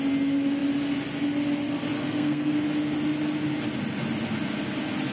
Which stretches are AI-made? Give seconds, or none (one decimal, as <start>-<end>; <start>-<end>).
2.0-2.5

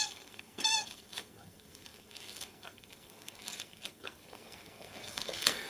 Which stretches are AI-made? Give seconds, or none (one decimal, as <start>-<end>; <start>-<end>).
0.0-5.7